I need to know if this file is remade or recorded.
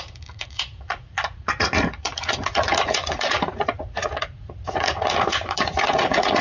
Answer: remade